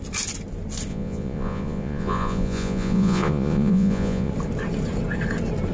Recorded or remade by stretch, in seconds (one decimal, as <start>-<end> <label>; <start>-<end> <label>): 0.0-0.9 recorded; 0.9-4.3 remade; 4.3-5.7 recorded